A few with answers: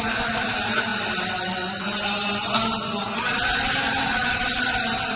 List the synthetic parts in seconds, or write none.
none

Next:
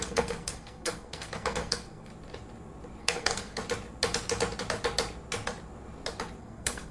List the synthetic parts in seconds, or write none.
0.0-2.1 (codec, SNAC); 3.0-3.6; 6.4-6.9

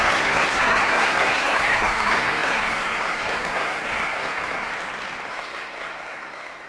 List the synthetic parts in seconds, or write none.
0.0-4.7 (codec, SNAC); 5.3-6.7

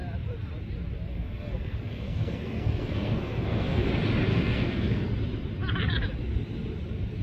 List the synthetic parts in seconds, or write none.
1.1-3.9 (codec, SNAC); 4.3-5.1

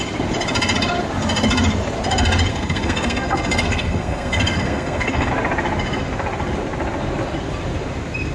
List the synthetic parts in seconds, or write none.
2.5-5.3 (codec, SNAC)

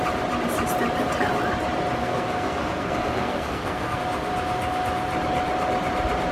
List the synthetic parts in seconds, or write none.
2.0-4.0 (codec, SNAC)

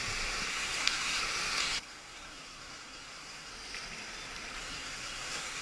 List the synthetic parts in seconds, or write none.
0.5-1.2 (codec, SNAC); 1.6-3.5; 4.6-5.6

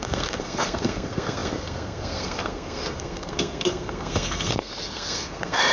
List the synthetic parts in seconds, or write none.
0.0-5.7 (codec, SNAC)